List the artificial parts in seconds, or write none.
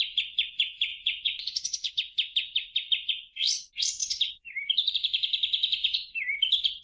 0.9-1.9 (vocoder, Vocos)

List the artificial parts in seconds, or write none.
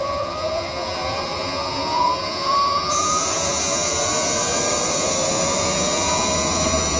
0.0-7.0 (vocoder, Vocos)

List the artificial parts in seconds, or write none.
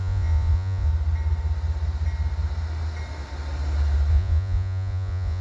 0.0-0.9 (vocoder, Vocos); 4.1-5.4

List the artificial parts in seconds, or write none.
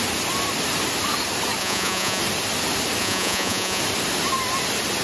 1.6-2.2 (vocoder, Vocos); 3.0-3.8